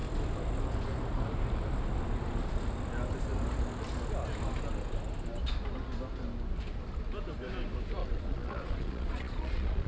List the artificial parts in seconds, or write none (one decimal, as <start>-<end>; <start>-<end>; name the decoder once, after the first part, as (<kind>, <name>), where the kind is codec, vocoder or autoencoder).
8.0-9.9 (vocoder, Vocos)